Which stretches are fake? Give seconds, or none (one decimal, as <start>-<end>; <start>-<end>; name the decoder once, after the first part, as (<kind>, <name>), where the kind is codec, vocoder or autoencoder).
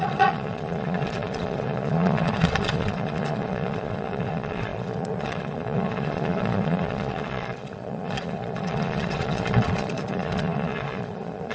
0.0-11.5 (vocoder, Vocos)